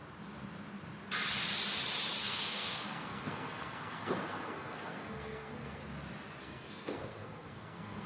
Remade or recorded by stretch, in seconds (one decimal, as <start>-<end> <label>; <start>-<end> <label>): 0.0-2.2 recorded; 2.2-5.8 remade; 5.8-6.4 recorded; 6.4-8.1 remade